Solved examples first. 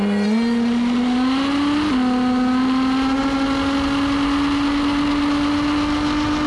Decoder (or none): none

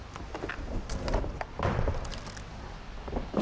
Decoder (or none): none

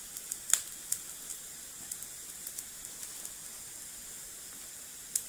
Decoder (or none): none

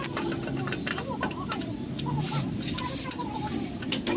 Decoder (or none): none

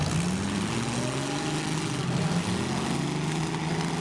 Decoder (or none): none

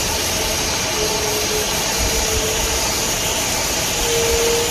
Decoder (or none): none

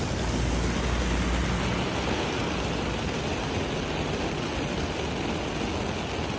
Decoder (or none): none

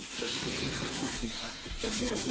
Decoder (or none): codec, SNAC